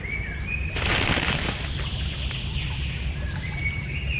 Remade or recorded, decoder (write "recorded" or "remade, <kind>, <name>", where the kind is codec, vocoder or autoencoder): recorded